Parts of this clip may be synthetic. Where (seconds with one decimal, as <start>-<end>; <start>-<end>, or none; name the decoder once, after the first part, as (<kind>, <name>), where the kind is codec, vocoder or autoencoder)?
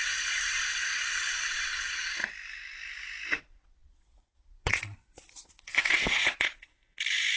0.0-2.2 (vocoder, Vocos); 3.3-6.8